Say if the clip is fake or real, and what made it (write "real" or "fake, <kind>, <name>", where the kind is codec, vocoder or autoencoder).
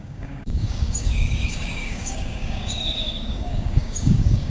fake, codec, DAC